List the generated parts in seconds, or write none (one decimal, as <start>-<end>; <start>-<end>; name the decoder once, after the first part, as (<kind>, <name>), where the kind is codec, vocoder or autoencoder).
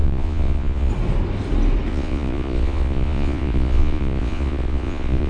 0.0-0.9 (vocoder, Vocos); 1.9-5.3